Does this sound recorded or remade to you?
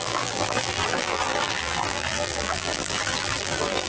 remade